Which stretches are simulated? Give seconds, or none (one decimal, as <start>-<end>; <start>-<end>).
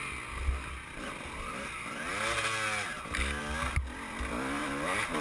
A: none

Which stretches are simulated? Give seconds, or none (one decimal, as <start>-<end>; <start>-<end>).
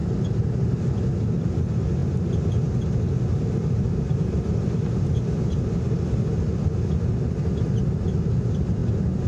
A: none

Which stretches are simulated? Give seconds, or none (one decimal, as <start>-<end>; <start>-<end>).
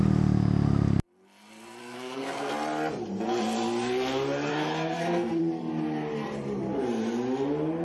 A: 1.8-2.5; 4.5-5.4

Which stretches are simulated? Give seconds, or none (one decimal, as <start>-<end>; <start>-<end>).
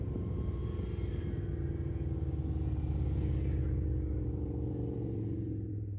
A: 0.0-0.6; 4.2-6.0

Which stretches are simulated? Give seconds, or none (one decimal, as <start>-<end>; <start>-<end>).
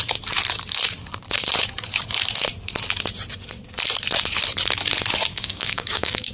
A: 5.3-6.3